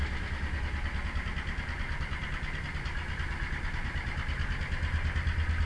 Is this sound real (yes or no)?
yes